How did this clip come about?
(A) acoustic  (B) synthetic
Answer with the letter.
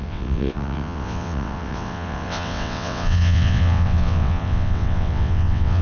B